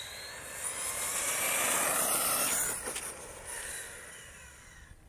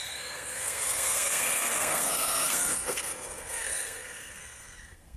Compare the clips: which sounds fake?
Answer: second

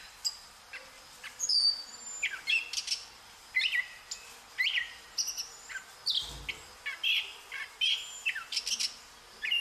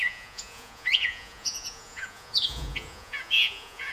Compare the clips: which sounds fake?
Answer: second